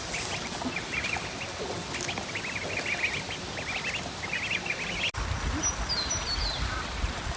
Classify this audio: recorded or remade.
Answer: recorded